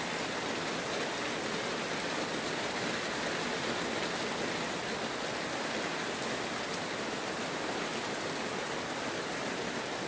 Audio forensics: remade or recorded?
recorded